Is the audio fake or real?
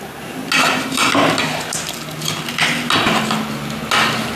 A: real